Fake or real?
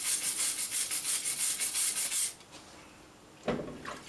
real